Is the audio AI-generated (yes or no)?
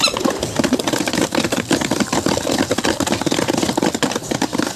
no